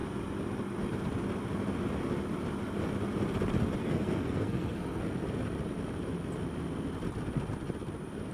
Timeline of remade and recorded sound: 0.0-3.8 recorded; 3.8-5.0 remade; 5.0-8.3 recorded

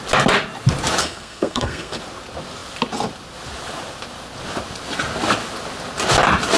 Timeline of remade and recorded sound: 0.0-1.0 recorded; 1.0-2.0 remade; 2.0-6.6 recorded

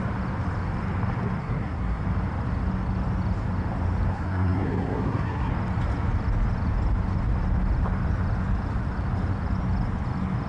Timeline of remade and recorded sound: 0.0-1.4 recorded; 1.4-2.0 remade; 2.0-4.1 recorded; 4.1-5.5 remade; 5.5-10.5 recorded

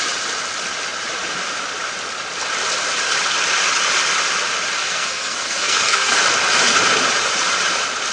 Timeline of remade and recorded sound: 0.0-4.8 recorded; 4.8-6.2 remade; 6.2-8.1 recorded

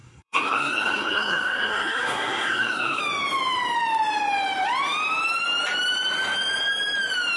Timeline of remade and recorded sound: 0.0-3.0 remade; 3.0-7.4 recorded

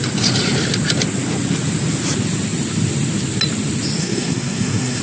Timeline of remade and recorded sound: 0.0-4.0 recorded; 4.0-5.0 remade

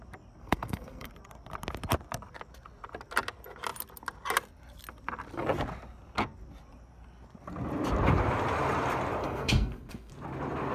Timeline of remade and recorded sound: 0.0-0.4 recorded; 0.4-1.1 remade; 1.1-9.2 recorded; 9.2-10.1 remade; 10.1-10.7 recorded